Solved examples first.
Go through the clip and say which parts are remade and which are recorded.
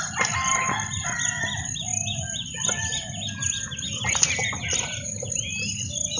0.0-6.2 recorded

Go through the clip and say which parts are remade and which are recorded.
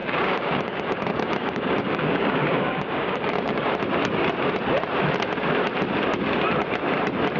0.0-3.7 remade; 3.7-7.4 recorded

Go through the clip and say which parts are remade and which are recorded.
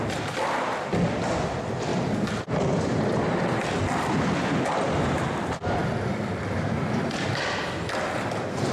0.0-1.9 recorded; 1.9-3.3 remade; 3.3-5.8 recorded; 5.8-6.4 remade; 6.4-8.7 recorded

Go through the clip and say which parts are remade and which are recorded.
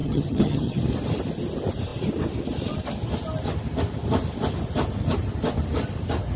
0.0-0.8 remade; 0.8-6.4 recorded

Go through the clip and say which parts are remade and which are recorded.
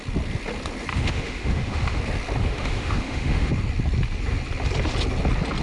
0.0-0.9 recorded; 0.9-2.0 remade; 2.0-2.4 recorded; 2.4-3.5 remade; 3.5-5.6 recorded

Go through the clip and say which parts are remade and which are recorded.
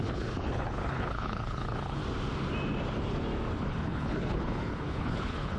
0.0-2.0 remade; 2.0-3.6 recorded; 3.6-5.6 remade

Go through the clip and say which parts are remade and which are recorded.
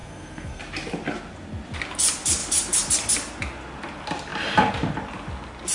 0.0-0.6 remade; 0.6-5.7 recorded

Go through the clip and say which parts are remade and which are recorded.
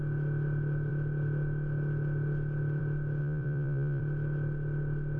0.0-3.2 recorded; 3.2-4.0 remade; 4.0-5.2 recorded